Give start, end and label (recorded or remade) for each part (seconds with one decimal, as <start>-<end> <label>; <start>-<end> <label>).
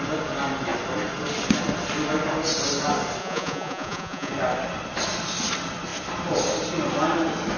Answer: 0.0-3.2 recorded; 3.2-4.3 remade; 4.3-7.6 recorded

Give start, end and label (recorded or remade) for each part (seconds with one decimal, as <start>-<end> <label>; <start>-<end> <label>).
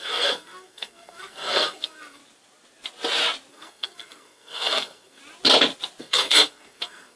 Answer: 0.0-2.2 remade; 2.2-3.5 recorded; 3.5-5.2 remade; 5.2-6.0 recorded; 6.0-7.2 remade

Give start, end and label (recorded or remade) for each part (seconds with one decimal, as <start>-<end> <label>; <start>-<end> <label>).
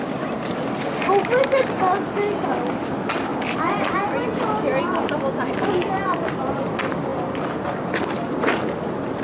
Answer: 0.0-9.2 recorded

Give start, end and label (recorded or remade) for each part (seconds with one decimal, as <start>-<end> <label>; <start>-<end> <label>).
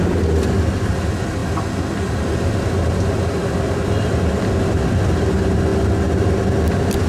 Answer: 0.0-7.1 recorded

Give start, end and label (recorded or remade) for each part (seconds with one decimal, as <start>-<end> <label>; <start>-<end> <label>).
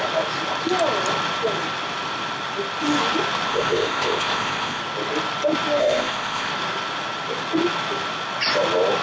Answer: 0.0-3.5 recorded; 3.5-4.8 remade; 4.8-5.8 recorded; 5.8-6.5 remade; 6.5-9.0 recorded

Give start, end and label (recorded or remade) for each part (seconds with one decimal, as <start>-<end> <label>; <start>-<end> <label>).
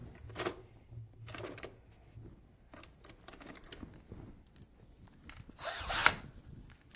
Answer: 0.0-7.0 recorded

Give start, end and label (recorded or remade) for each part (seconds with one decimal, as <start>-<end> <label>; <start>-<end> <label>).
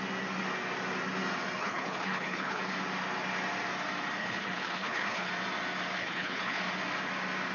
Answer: 0.0-1.6 recorded; 1.6-2.6 remade; 2.6-4.2 recorded; 4.2-5.3 remade; 5.3-6.0 recorded; 6.0-6.6 remade; 6.6-7.5 recorded